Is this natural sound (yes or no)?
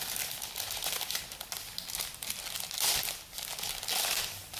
yes